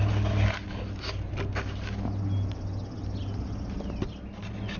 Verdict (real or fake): real